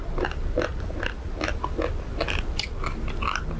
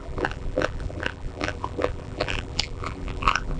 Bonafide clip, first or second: first